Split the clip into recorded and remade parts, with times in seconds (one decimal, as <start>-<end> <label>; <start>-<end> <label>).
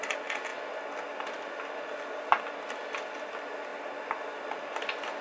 0.0-5.2 recorded